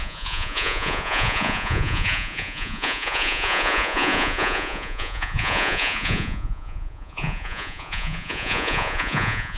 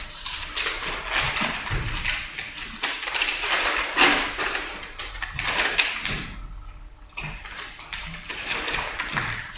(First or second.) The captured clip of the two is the second